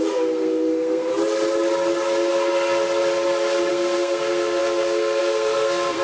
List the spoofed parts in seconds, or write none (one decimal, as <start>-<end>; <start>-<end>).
0.0-1.1; 3.7-6.0